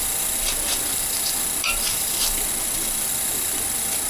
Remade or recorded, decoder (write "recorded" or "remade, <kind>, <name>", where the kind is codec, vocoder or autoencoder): recorded